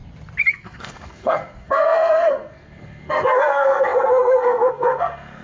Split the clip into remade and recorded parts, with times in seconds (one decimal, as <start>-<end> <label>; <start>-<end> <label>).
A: 0.0-0.5 recorded; 0.5-5.4 remade